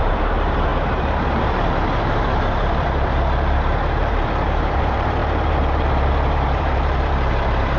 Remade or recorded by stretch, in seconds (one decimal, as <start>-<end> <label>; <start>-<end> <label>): 0.0-7.8 remade